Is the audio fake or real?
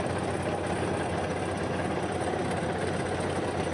real